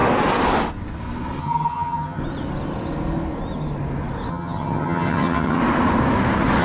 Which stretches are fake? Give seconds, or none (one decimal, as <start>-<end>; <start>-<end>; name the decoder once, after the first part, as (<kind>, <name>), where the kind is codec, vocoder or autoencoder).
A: 1.4-2.2 (vocoder, HiFi-GAN); 4.3-5.6